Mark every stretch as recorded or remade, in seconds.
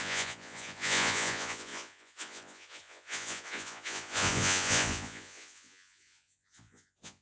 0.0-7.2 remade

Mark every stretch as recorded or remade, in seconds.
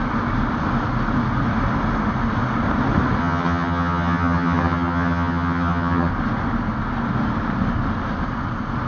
0.0-3.2 recorded; 3.2-6.1 remade; 6.1-8.9 recorded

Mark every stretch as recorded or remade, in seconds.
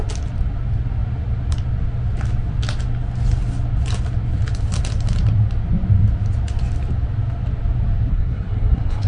0.0-8.1 recorded; 8.1-9.1 remade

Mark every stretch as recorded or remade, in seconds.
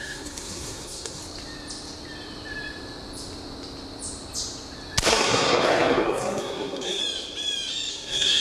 0.0-1.2 remade; 1.2-5.1 recorded; 5.1-7.0 remade; 7.0-7.9 recorded; 7.9-8.4 remade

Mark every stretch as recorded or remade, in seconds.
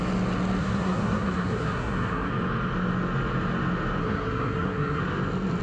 0.0-0.6 recorded; 0.6-2.3 remade; 2.3-4.0 recorded; 4.0-5.0 remade; 5.0-5.6 recorded